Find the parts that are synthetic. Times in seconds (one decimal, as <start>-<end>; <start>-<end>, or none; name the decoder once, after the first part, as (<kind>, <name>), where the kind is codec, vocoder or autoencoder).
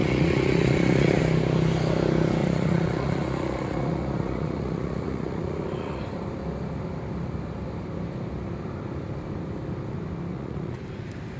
0.0-1.2 (vocoder, Vocos); 2.4-6.0; 10.3-10.8